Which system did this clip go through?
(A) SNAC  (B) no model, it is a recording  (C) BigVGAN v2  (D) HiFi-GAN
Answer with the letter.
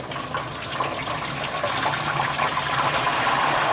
B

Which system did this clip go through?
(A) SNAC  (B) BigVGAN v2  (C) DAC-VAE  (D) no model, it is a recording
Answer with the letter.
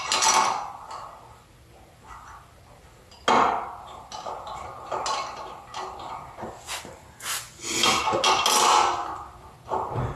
D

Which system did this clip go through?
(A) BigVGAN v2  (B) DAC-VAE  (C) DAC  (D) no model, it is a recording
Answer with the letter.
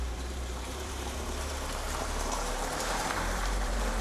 A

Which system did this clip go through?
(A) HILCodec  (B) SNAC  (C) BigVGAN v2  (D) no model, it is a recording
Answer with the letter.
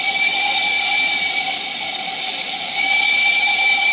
D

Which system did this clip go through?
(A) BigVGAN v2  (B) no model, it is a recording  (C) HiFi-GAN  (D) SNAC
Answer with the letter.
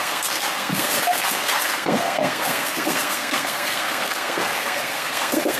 D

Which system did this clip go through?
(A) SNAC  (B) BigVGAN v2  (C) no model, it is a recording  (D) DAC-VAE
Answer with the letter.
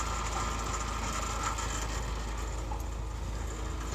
C